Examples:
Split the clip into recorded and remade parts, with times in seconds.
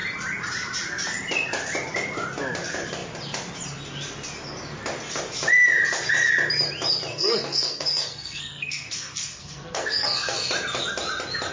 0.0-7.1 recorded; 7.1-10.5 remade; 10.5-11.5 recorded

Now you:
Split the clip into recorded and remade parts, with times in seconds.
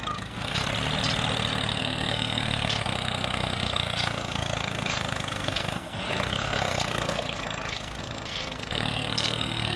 0.0-0.6 remade; 0.6-1.8 recorded; 1.8-9.8 remade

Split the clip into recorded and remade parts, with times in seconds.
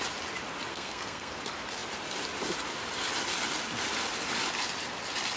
0.0-0.7 recorded; 0.7-1.4 remade; 1.4-5.4 recorded